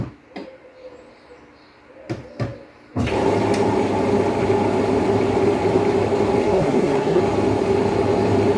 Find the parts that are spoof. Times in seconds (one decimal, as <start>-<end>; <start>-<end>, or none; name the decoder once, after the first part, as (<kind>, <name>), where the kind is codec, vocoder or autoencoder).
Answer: 6.4-7.2 (codec, SNAC)